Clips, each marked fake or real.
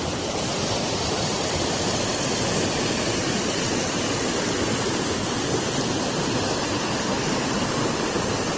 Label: real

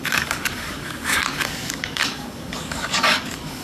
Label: fake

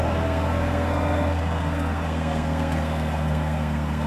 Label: fake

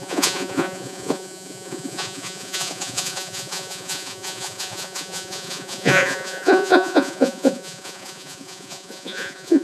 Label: fake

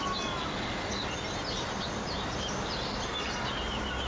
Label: real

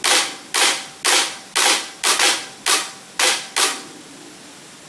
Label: real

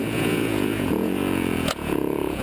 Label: fake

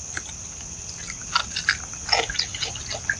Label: real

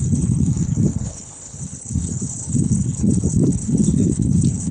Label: fake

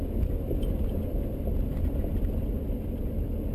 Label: real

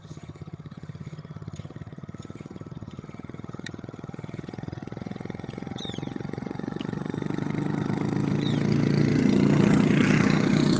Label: fake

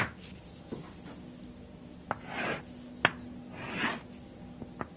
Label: real